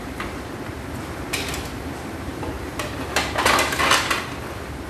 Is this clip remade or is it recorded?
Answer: recorded